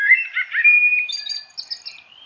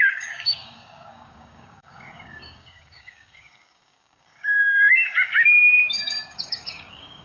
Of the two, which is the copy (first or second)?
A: second